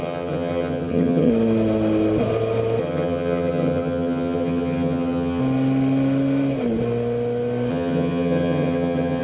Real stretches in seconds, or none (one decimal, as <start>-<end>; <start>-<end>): 1.3-2.8; 5.4-7.7